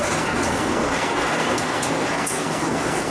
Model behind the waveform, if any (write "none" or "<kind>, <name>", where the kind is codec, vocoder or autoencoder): codec, SNAC